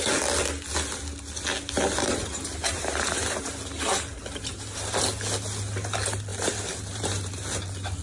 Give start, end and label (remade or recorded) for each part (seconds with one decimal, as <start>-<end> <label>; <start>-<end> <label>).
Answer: 0.0-2.0 recorded; 2.0-5.0 remade; 5.0-6.3 recorded; 6.3-7.4 remade; 7.4-8.0 recorded